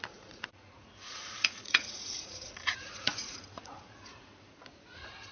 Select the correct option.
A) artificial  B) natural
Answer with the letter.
A